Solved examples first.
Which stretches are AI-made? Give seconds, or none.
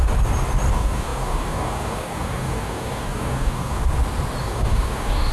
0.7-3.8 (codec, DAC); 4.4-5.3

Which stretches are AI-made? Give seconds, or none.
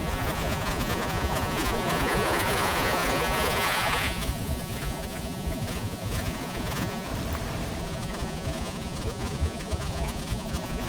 0.0-7.1 (vocoder, Vocos); 7.8-10.9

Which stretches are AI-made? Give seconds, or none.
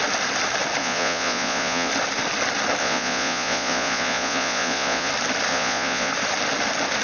0.8-1.9 (vocoder, Vocos); 2.8-5.1; 5.5-6.1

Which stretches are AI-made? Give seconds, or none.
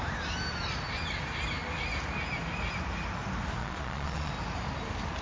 3.6-4.3 (vocoder, Vocos)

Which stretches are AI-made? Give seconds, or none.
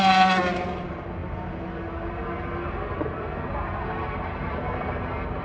none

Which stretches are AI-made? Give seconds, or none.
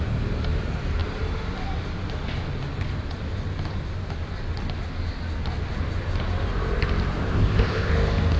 7.2-7.9 (codec, ZipCodec)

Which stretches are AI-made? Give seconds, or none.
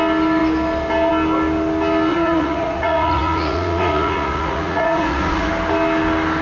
2.1-5.5 (vocoder, Vocos)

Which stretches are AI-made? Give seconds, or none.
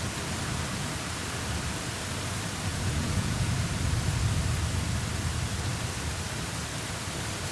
2.7-3.5 (vocoder, Vocos)